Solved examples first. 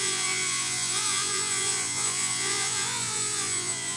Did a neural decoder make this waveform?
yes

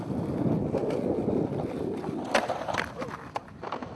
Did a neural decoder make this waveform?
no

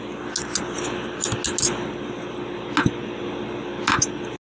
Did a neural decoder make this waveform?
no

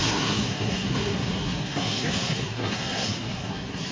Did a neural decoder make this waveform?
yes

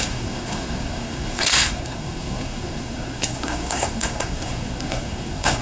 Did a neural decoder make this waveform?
yes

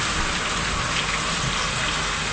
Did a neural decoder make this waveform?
no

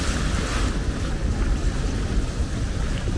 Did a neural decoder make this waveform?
no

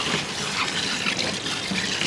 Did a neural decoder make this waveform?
no